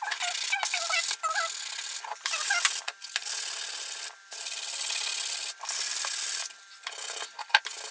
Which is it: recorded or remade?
recorded